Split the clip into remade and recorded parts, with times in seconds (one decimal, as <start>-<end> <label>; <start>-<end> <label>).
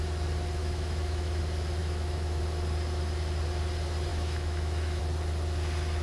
0.0-0.6 recorded; 0.6-1.4 remade; 1.4-1.8 recorded; 1.8-2.4 remade; 2.4-4.1 recorded; 4.1-5.0 remade; 5.0-6.0 recorded